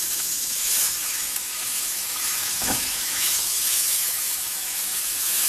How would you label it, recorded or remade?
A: remade